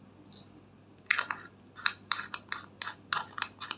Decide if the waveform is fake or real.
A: real